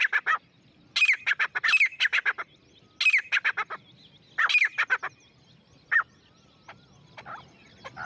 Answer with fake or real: real